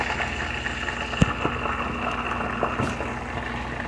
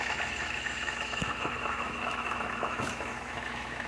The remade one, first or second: second